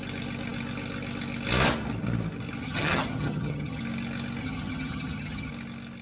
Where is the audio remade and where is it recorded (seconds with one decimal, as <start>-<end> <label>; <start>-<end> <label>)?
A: 0.0-2.6 recorded; 2.6-3.8 remade; 3.8-4.4 recorded; 4.4-5.5 remade; 5.5-6.0 recorded